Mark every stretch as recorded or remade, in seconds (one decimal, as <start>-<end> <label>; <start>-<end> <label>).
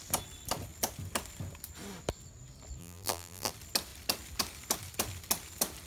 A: 0.0-2.8 recorded; 2.8-3.5 remade; 3.5-5.9 recorded